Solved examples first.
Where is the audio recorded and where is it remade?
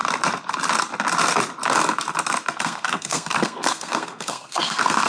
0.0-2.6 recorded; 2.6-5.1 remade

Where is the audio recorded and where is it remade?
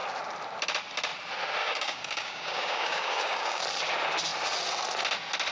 0.0-1.6 recorded; 1.6-3.6 remade; 3.6-5.5 recorded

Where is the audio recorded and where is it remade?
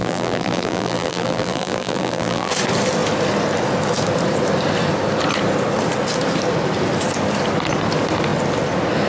0.0-2.5 remade; 2.5-9.1 recorded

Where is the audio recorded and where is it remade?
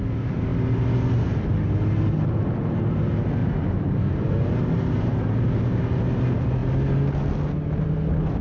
0.0-3.4 recorded; 3.4-5.6 remade; 5.6-8.4 recorded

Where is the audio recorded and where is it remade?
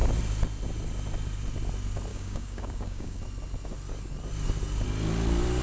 0.0-2.1 recorded; 2.1-3.2 remade; 3.2-5.6 recorded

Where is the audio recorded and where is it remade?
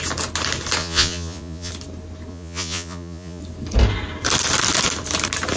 0.0-0.8 recorded; 0.8-1.7 remade; 1.7-2.3 recorded; 2.3-3.4 remade; 3.4-5.6 recorded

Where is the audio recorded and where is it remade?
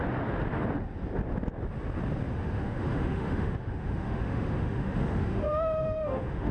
0.0-2.3 recorded; 2.3-6.5 remade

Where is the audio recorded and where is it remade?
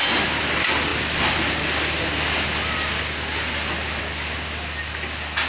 0.0-5.5 recorded